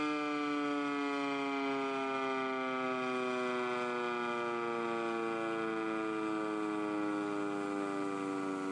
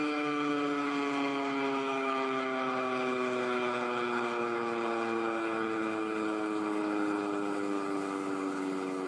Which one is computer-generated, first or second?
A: second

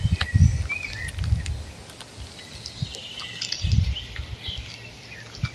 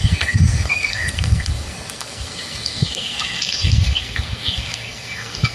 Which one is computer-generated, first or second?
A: second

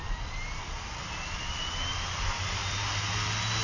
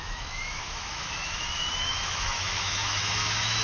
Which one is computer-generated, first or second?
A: second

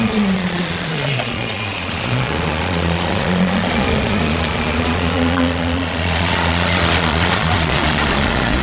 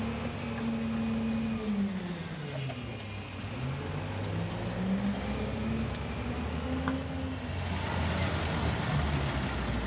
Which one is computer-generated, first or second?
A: first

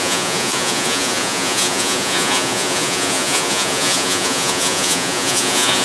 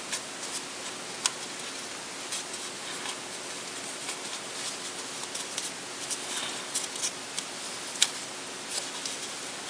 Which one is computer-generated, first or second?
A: first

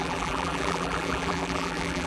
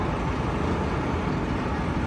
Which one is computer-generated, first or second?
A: first